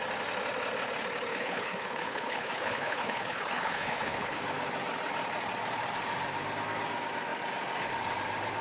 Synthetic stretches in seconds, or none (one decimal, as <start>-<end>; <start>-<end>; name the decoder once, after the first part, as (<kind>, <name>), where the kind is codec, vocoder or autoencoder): 1.3-4.4 (codec, HILCodec)